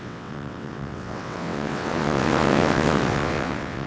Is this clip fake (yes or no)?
yes